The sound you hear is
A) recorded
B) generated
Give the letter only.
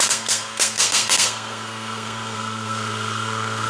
B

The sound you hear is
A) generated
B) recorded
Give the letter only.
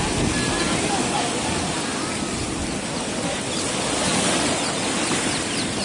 B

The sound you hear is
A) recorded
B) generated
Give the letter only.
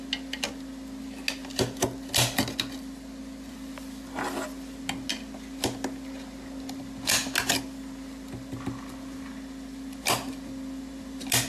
A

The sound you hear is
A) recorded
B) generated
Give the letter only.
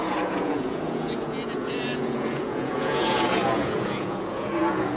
B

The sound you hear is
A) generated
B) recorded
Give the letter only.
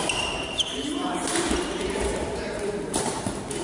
A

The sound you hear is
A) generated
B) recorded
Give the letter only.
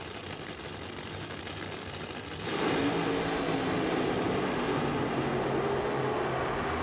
B